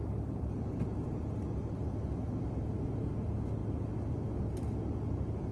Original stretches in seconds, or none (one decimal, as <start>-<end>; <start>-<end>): 0.0-5.5